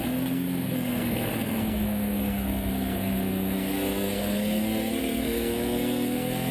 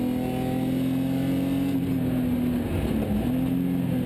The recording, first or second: second